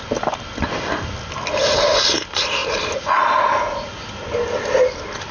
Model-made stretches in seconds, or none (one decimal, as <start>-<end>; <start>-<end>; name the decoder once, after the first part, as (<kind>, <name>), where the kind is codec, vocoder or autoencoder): none